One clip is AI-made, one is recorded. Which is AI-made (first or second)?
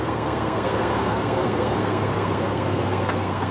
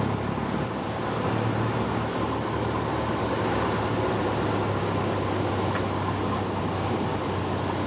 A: first